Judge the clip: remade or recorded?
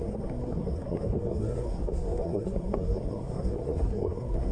remade